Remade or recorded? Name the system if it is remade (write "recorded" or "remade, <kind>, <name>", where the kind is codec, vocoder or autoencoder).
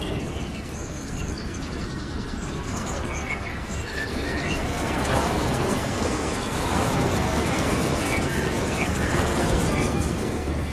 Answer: remade, codec, SNAC